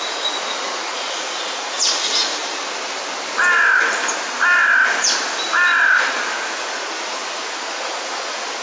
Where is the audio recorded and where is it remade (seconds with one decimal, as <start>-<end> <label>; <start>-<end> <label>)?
0.0-2.4 remade; 2.4-6.1 recorded; 6.1-8.6 remade